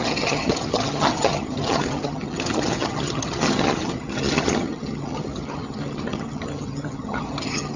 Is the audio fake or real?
fake